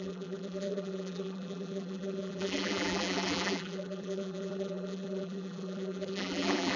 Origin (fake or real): fake